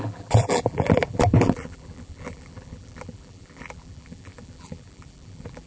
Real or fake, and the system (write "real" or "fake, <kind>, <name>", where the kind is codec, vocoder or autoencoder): fake, vocoder, BigVGAN v2